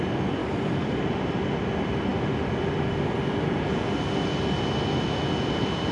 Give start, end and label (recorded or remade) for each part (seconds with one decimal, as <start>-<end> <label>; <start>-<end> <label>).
0.0-0.4 recorded; 0.4-1.0 remade; 1.0-5.9 recorded